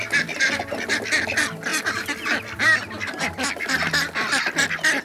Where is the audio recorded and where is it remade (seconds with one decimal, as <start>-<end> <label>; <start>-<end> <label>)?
0.0-5.0 recorded